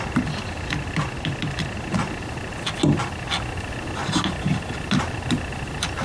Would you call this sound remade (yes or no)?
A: no